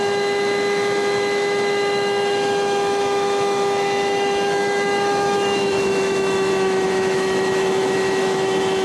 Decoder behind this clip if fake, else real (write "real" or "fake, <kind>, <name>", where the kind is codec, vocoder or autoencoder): fake, autoencoder, DAC-VAE